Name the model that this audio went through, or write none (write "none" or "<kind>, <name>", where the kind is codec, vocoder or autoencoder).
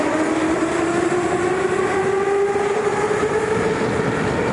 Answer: none